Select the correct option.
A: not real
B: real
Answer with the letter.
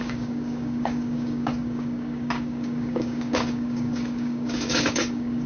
A